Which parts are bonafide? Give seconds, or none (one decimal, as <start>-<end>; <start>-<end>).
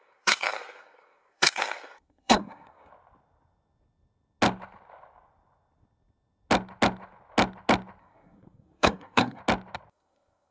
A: 2.9-8.0; 9.4-9.9